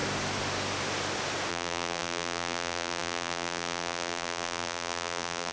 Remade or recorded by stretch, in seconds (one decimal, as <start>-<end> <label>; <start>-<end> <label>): 0.0-1.5 recorded; 1.5-5.5 remade